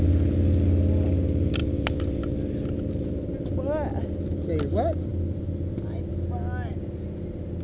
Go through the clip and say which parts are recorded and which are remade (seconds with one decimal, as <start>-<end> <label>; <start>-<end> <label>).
0.0-7.6 recorded